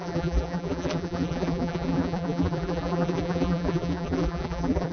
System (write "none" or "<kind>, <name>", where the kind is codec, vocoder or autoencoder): vocoder, BigVGAN v2